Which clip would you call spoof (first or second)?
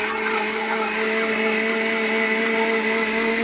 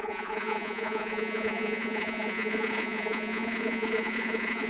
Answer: second